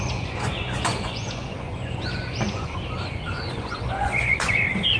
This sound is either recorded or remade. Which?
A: remade